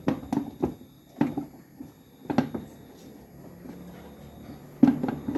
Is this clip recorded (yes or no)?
yes